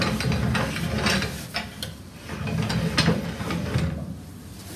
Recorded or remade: recorded